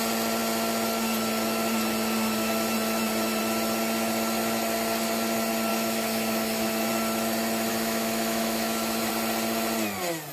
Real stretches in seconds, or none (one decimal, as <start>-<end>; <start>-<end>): 0.0-5.7; 6.9-7.7; 9.1-10.3